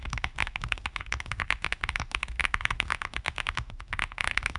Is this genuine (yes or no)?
no